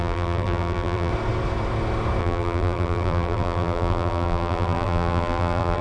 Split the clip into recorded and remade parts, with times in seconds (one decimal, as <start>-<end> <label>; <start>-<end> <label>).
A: 0.0-1.1 remade; 1.1-2.2 recorded; 2.2-5.8 remade